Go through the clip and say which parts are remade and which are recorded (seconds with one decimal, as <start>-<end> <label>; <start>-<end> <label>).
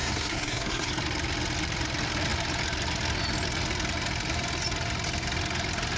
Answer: 0.0-0.9 remade; 0.9-6.0 recorded